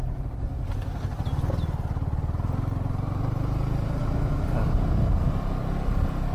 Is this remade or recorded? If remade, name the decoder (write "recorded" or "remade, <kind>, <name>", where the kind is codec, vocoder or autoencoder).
recorded